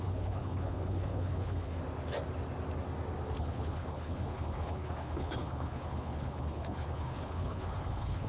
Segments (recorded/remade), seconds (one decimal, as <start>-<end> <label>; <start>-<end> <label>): 0.0-1.8 remade; 1.8-3.4 recorded; 3.4-8.3 remade